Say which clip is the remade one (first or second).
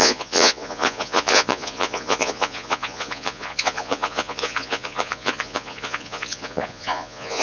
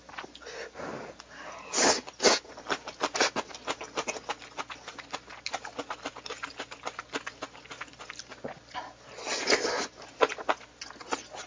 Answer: first